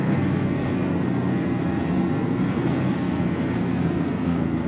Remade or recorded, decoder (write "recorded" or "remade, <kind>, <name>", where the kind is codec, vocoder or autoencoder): remade, codec, SNAC